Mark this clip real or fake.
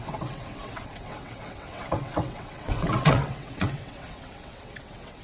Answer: fake